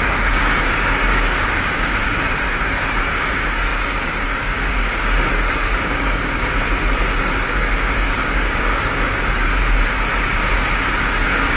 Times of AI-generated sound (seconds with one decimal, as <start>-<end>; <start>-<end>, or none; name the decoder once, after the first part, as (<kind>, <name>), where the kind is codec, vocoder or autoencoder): 0.0-6.4 (codec, DAC); 7.2-9.5; 11.0-11.6